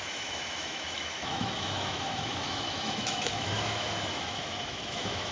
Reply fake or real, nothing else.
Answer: fake